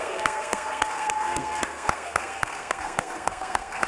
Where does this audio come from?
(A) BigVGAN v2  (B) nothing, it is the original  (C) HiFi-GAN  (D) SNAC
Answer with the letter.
D